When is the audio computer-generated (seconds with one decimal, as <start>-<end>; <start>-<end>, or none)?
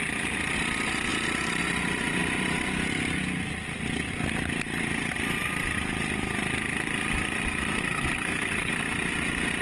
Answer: 7.8-8.7